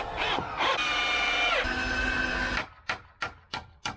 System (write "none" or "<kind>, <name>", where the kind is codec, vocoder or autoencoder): none